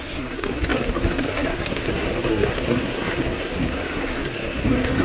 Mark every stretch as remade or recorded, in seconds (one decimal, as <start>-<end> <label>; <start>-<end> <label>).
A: 0.0-5.0 remade